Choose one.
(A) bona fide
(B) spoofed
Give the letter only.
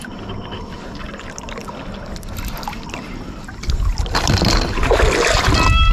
A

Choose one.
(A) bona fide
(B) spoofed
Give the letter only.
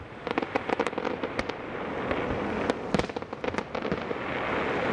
A